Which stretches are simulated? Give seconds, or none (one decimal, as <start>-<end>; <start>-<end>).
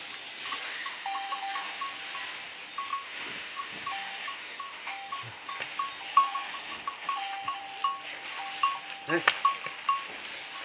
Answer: 0.7-1.9; 2.9-5.5; 6.1-7.6